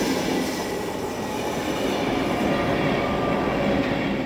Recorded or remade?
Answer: recorded